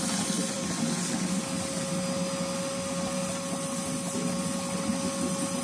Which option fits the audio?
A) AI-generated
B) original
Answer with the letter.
B